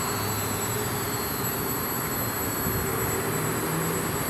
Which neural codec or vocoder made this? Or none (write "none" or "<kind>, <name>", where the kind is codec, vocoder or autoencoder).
none